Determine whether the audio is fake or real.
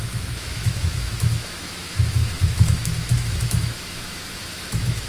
fake